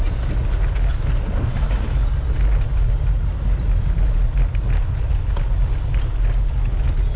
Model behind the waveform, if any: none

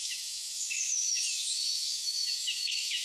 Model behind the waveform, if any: autoencoder, DAC-VAE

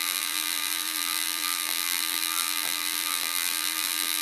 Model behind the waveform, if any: vocoder, BigVGAN v2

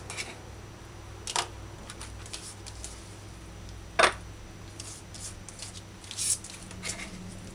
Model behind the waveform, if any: none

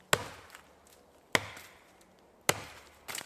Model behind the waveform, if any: none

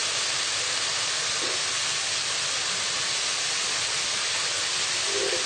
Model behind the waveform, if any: none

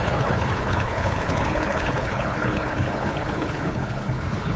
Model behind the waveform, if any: codec, HILCodec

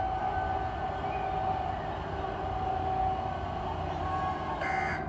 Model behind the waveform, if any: none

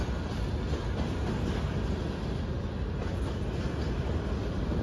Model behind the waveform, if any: none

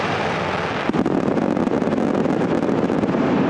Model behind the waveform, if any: none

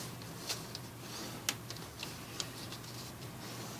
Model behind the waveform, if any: none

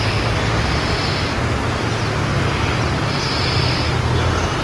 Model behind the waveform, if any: none